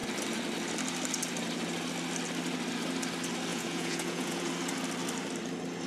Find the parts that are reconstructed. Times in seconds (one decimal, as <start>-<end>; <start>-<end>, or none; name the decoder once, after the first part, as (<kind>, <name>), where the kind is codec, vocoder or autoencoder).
3.5-4.5 (vocoder, Vocos)